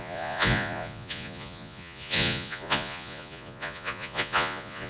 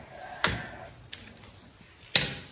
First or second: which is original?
second